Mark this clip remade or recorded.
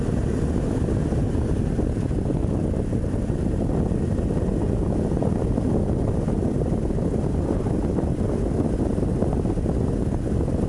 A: recorded